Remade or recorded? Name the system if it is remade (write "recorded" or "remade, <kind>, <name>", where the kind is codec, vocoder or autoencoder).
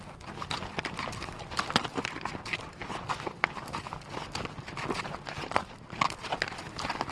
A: recorded